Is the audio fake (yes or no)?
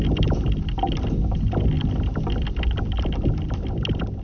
no